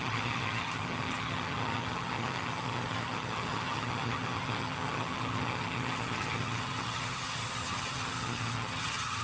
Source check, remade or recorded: remade